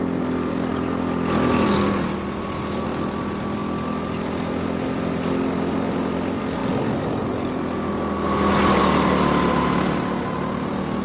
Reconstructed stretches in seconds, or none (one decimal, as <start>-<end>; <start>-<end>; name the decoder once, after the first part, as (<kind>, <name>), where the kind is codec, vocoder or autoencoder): none